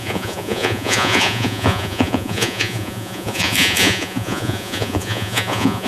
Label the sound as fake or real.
fake